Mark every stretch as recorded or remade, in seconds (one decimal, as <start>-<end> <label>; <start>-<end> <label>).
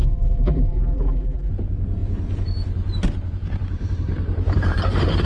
0.0-1.5 remade; 1.5-5.3 recorded